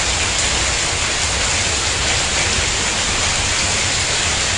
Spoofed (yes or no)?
no